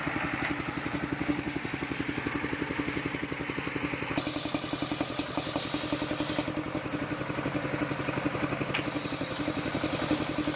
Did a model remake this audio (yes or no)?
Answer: no